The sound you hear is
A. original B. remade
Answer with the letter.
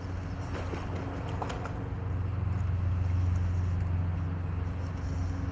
A